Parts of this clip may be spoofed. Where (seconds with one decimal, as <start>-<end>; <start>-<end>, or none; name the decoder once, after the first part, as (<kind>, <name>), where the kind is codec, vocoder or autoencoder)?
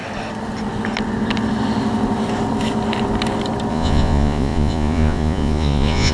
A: 3.7-6.1 (vocoder, Vocos)